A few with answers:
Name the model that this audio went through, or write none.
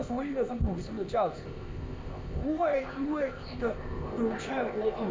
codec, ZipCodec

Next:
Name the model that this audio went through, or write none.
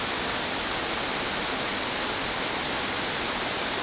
none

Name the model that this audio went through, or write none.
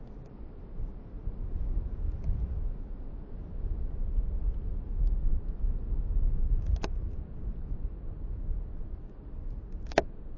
none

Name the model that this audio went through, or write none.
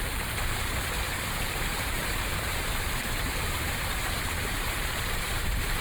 vocoder, BigVGAN v2